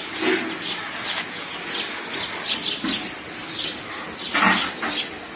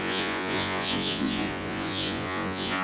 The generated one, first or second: second